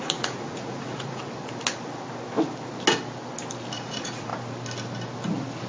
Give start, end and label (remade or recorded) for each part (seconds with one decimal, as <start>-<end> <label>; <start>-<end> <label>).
0.0-1.2 remade; 1.2-3.7 recorded; 3.7-4.3 remade; 4.3-5.7 recorded